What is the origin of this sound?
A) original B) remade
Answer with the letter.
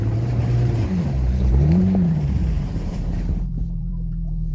B